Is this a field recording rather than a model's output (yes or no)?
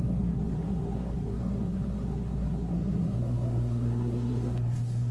no